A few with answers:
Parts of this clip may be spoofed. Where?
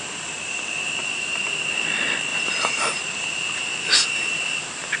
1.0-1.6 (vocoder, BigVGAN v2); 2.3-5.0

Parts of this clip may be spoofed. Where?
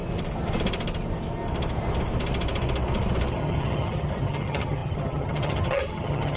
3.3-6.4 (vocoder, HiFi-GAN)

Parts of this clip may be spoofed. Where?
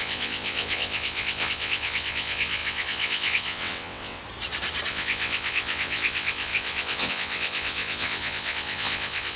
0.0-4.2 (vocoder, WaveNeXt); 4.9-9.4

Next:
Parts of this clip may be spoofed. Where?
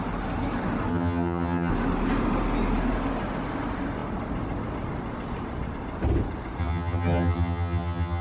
0.9-1.7 (vocoder, HiFi-GAN); 6.6-8.2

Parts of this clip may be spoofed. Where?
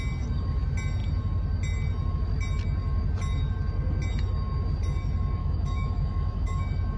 5.4-6.6 (autoencoder, DAC-VAE)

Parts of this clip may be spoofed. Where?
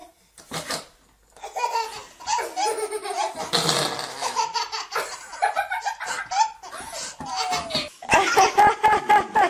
4.1-4.5 (autoencoder, DAC-VAE)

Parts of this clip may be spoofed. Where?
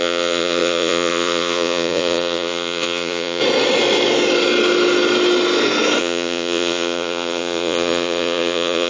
0.0-3.4 (vocoder, Vocos); 6.0-8.9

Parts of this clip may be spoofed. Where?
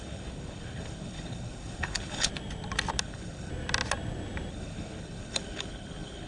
0.0-2.3 (codec, HILCodec); 3.0-3.5; 4.5-6.3